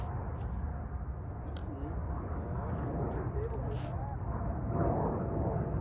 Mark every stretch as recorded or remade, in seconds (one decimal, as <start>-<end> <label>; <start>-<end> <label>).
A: 0.0-5.8 recorded